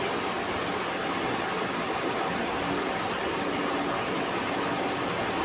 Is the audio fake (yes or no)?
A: no